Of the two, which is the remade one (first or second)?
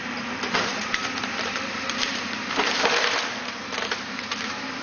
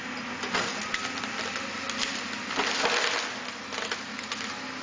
first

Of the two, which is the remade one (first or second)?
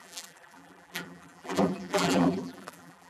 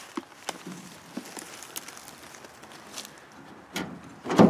first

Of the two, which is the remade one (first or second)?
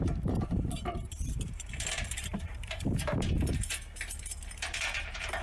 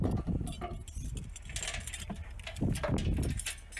first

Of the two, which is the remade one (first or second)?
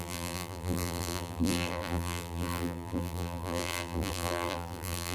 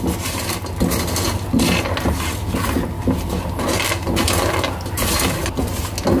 first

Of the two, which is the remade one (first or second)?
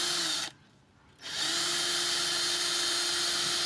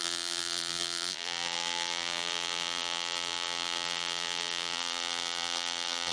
second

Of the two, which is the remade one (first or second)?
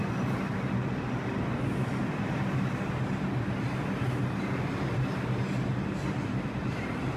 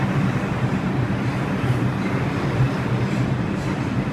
second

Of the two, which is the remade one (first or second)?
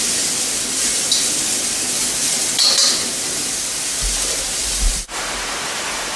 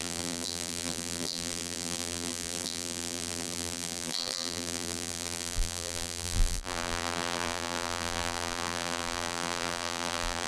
second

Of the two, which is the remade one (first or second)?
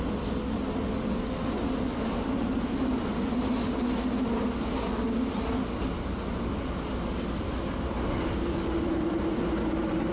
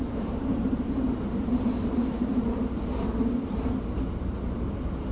second